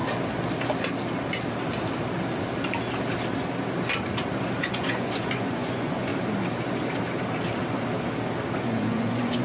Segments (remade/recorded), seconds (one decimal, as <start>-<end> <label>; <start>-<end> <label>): 0.0-4.6 recorded; 4.6-6.1 remade; 6.1-8.6 recorded; 8.6-9.4 remade